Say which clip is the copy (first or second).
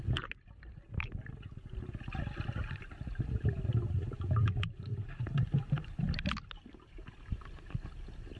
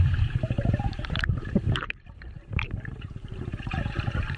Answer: second